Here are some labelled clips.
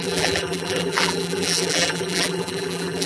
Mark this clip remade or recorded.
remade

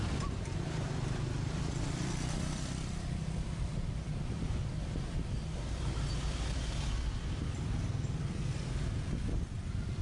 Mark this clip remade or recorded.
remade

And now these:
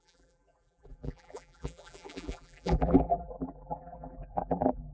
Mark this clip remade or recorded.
remade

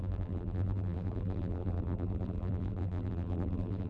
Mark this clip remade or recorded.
remade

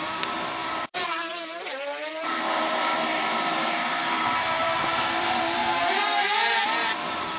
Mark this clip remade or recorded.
remade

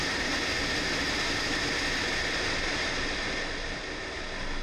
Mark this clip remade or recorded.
recorded